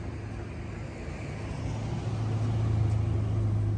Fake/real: real